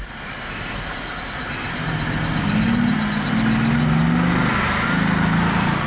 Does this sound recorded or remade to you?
recorded